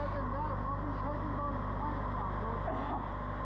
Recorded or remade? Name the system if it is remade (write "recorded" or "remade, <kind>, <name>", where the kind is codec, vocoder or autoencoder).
recorded